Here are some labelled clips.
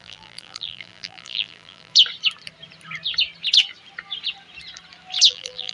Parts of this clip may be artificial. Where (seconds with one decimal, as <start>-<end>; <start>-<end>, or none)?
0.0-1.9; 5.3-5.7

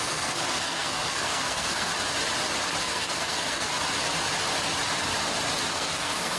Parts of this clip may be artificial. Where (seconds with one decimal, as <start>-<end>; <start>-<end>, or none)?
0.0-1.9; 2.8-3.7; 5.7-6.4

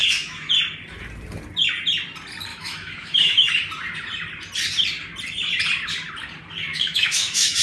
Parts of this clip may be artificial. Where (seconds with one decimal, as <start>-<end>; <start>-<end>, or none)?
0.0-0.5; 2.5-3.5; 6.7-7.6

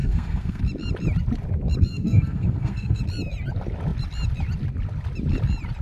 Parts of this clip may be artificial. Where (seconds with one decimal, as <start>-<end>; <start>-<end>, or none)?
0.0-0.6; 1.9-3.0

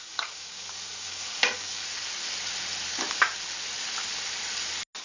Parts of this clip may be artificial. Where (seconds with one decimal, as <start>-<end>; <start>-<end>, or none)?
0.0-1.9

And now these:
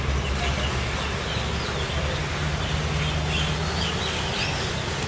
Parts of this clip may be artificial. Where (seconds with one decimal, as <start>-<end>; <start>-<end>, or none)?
none